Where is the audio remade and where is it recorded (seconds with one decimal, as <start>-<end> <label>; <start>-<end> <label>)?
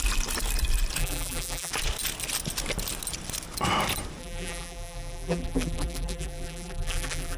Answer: 0.0-1.0 recorded; 1.0-1.7 remade; 1.7-4.2 recorded; 4.2-7.4 remade